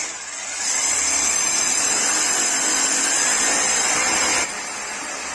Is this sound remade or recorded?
recorded